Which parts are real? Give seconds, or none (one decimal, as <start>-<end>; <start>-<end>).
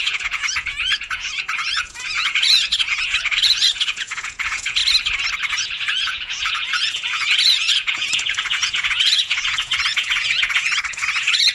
4.8-5.5